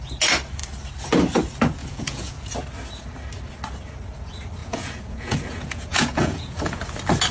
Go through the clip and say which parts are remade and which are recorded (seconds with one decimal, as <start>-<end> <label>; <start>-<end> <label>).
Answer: 0.0-1.8 recorded; 1.8-2.4 remade; 2.4-4.6 recorded; 4.6-6.8 remade; 6.8-7.3 recorded

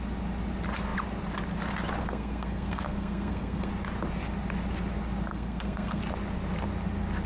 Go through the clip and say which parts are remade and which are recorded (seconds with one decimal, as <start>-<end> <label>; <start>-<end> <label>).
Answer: 0.0-2.0 recorded; 2.0-3.7 remade; 3.7-5.3 recorded; 5.3-6.0 remade; 6.0-7.3 recorded

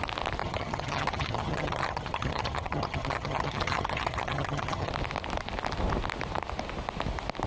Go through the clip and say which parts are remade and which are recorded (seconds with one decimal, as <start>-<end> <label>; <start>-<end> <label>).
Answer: 0.0-0.4 recorded; 0.4-4.9 remade; 4.9-7.5 recorded

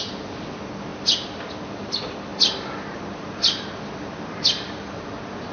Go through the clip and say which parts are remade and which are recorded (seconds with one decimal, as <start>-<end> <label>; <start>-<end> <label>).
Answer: 0.0-5.5 recorded

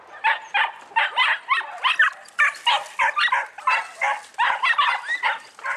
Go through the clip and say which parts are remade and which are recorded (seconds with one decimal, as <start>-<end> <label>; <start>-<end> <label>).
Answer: 0.0-5.8 recorded